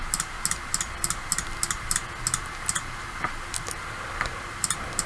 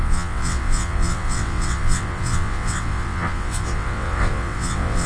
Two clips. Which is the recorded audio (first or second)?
first